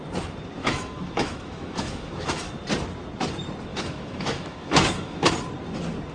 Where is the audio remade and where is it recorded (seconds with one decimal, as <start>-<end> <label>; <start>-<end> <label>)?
0.0-0.6 recorded; 0.6-2.5 remade; 2.5-3.7 recorded; 3.7-5.3 remade; 5.3-6.1 recorded